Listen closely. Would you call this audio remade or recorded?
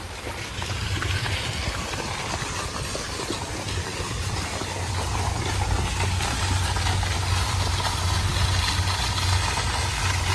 recorded